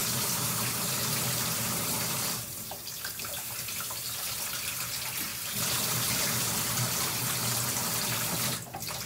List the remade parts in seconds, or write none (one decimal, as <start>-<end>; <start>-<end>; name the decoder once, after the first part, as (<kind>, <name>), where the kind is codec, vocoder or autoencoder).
0.0-4.4 (vocoder, BigVGAN v2); 5.3-6.3